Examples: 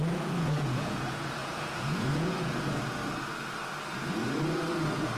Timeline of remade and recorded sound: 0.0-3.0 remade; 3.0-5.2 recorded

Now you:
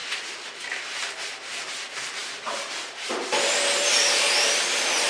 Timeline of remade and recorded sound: 0.0-1.3 recorded; 1.3-5.1 remade

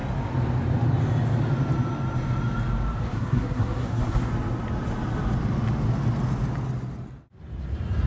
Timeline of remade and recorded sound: 0.0-3.1 recorded; 3.1-4.3 remade; 4.3-8.1 recorded

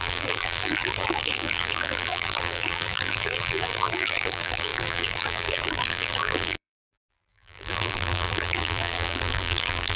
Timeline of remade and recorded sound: 0.0-10.0 remade

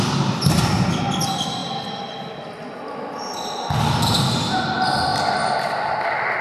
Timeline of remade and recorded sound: 0.0-6.4 recorded

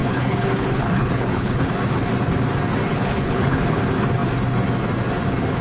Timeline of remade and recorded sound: 0.0-1.7 remade; 1.7-2.9 recorded; 2.9-3.8 remade; 3.8-5.6 recorded

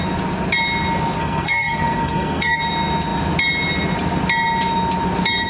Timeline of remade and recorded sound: 0.0-1.2 recorded; 1.2-2.6 remade; 2.6-5.5 recorded

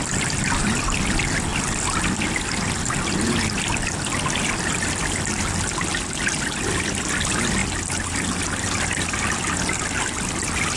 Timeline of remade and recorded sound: 0.0-10.8 recorded